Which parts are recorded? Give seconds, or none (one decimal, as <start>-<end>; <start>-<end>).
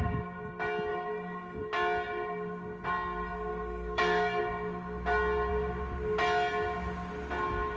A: 0.0-0.9; 1.6-3.5; 4.4-7.8